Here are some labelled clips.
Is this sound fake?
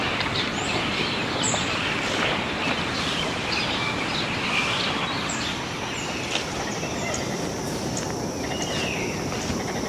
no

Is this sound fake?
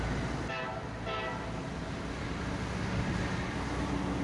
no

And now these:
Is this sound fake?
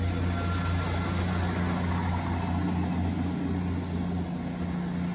no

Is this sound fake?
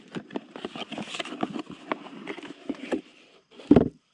yes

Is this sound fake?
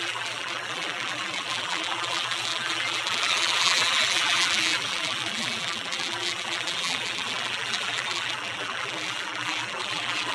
yes